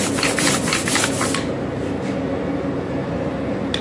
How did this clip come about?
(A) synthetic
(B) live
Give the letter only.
B